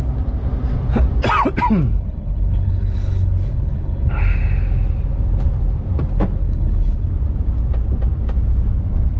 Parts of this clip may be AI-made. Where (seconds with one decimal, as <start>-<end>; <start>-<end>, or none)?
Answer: 1.9-4.1; 6.4-7.1